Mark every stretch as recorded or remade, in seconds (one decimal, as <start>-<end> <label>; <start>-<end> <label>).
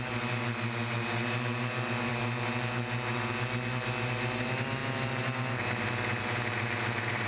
0.0-7.3 recorded